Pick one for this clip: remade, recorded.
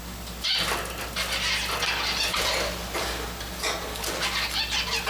recorded